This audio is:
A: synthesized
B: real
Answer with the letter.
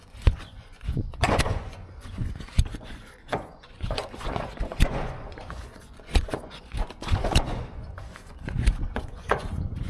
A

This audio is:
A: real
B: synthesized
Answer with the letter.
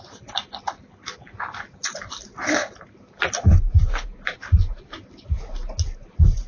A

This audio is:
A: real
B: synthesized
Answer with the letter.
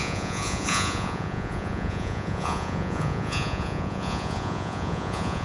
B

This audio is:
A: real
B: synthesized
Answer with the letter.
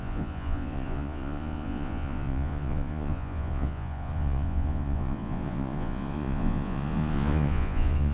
B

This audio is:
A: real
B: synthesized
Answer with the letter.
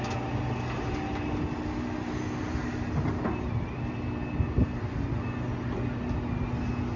A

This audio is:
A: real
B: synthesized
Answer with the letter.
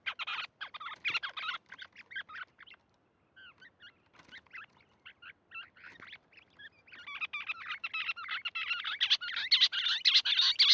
A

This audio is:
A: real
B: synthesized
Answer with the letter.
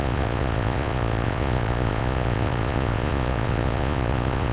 B